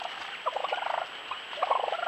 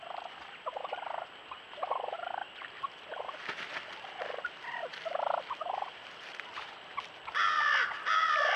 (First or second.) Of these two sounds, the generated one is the second